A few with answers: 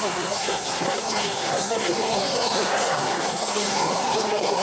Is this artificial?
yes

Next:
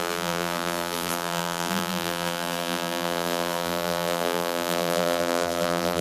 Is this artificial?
yes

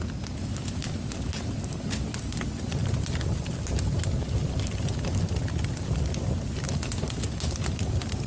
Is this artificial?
no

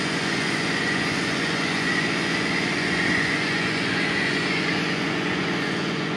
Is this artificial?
yes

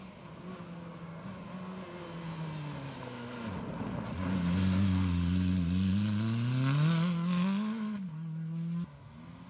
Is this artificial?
no